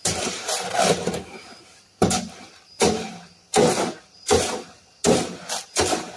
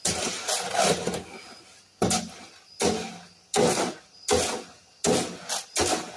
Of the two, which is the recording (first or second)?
second